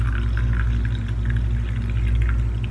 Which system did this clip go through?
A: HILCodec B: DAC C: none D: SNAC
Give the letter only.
C